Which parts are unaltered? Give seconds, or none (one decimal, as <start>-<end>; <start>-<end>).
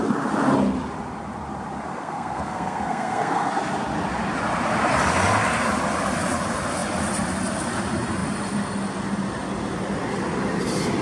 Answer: 0.0-1.9; 3.5-11.0